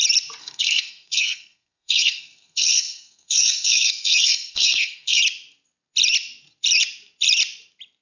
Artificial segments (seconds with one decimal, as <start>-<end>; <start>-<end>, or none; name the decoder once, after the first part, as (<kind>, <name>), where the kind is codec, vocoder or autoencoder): 0.4-5.2 (codec, SNAC)